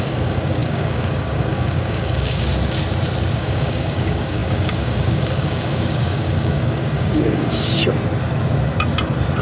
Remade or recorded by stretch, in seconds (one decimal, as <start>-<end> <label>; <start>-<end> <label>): 0.0-2.5 remade; 2.5-3.3 recorded; 3.3-7.8 remade; 7.8-9.4 recorded